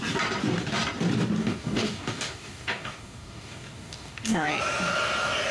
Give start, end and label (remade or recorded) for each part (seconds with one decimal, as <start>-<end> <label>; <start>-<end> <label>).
0.0-1.4 recorded; 1.4-4.5 remade; 4.5-5.5 recorded